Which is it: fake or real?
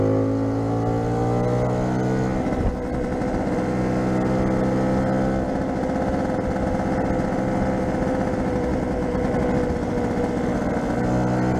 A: real